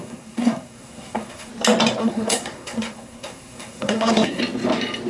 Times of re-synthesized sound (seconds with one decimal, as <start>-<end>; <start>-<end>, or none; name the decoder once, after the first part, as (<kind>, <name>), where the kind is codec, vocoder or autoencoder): 0.0-1.5 (codec, SNAC); 2.0-4.4